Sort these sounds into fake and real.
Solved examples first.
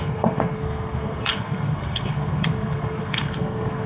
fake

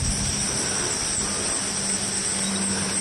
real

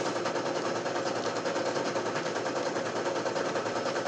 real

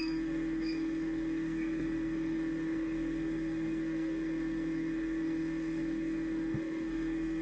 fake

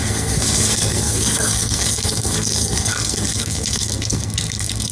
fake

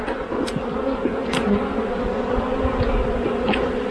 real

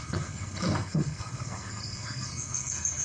fake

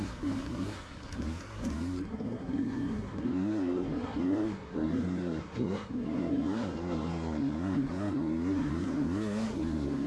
fake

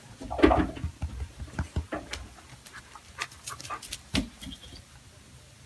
real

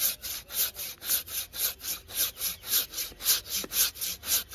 real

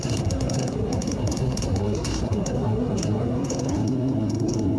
fake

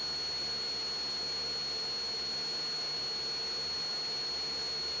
real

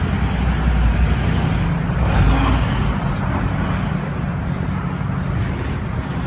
real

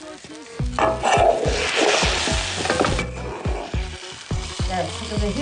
real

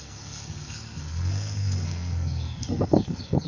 fake